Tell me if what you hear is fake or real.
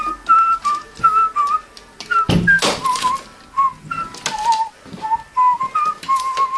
real